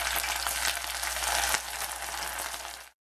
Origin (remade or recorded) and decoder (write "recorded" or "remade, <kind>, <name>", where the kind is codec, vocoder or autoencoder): recorded